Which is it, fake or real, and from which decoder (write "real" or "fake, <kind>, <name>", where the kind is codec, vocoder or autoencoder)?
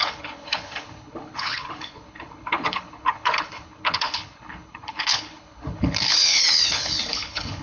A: fake, codec, HILCodec